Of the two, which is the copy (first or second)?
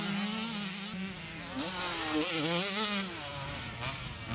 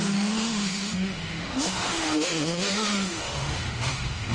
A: second